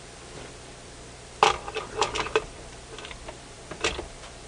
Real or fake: fake